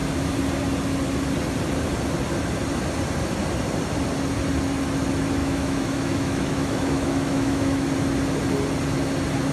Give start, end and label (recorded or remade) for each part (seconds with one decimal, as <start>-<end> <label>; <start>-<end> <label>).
0.0-5.4 recorded; 5.4-7.8 remade; 7.8-9.5 recorded